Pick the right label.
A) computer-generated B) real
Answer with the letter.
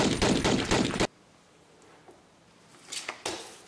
B